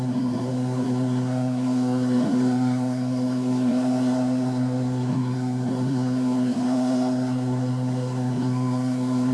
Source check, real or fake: fake